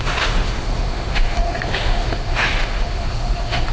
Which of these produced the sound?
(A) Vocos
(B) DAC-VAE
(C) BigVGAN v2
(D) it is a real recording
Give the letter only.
B